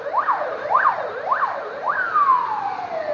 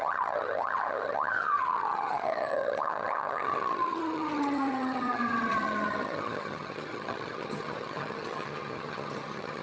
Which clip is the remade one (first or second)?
second